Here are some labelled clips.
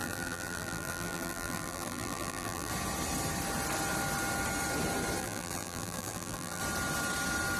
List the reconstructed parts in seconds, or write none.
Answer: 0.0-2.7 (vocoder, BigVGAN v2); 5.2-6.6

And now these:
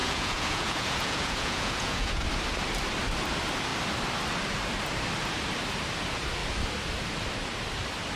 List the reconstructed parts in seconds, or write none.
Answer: 0.0-2.2 (vocoder, Vocos)

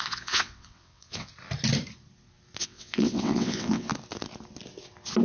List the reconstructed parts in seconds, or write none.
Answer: 0.0-1.3 (vocoder, WaveNeXt); 2.6-3.9